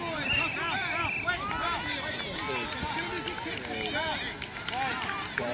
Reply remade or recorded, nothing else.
recorded